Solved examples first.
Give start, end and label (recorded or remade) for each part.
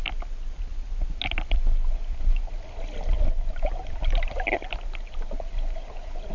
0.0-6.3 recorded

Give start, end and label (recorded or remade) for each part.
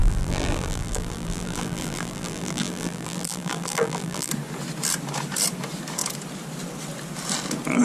0.0-4.3 remade; 4.3-7.8 recorded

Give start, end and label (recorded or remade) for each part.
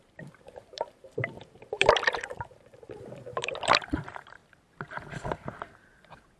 0.0-4.4 remade; 4.4-5.7 recorded; 5.7-6.4 remade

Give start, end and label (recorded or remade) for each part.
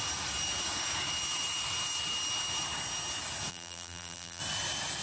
0.0-3.5 recorded; 3.5-4.4 remade; 4.4-5.0 recorded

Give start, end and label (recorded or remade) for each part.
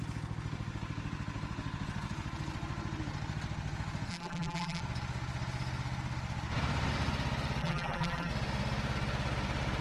0.0-4.1 recorded; 4.1-4.8 remade; 4.8-7.6 recorded; 7.6-8.3 remade; 8.3-9.8 recorded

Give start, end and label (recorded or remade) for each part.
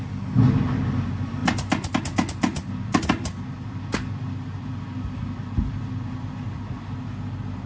0.0-7.7 recorded